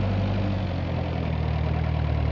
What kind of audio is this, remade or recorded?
recorded